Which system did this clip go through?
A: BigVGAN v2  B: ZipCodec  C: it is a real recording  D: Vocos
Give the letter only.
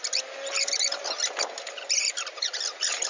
C